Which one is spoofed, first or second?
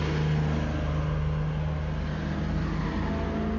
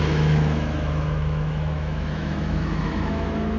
second